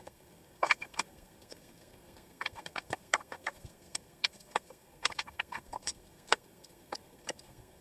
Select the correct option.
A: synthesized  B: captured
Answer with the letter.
A